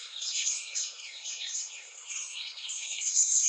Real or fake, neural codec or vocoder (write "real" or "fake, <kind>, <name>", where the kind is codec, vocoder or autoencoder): fake, codec, SNAC